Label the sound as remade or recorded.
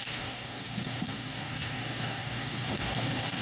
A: remade